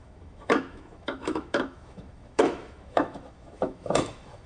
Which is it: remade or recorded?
remade